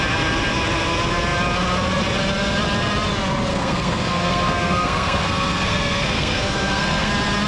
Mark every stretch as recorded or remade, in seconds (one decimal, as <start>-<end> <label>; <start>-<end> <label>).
0.0-3.5 recorded; 3.5-7.1 remade; 7.1-7.5 recorded